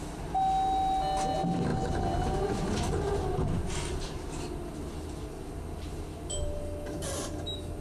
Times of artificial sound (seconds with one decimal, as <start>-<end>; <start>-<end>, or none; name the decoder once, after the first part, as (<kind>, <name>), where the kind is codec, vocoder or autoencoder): none